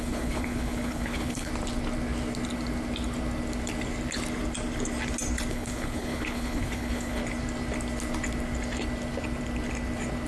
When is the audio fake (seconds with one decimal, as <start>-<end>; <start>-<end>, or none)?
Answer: 0.0-1.5; 5.5-7.2